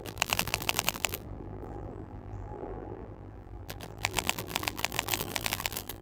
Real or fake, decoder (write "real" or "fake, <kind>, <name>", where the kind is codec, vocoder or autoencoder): fake, vocoder, BigVGAN v2